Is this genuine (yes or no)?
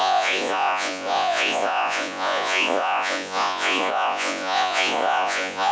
no